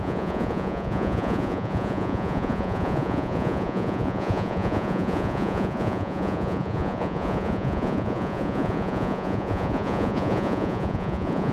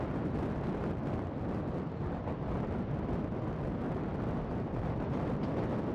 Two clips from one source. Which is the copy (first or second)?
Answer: first